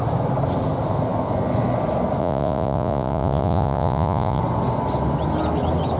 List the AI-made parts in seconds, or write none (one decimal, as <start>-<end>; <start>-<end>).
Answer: 2.2-4.4